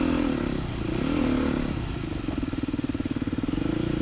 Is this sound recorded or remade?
recorded